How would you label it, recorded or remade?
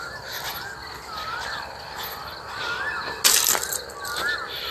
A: recorded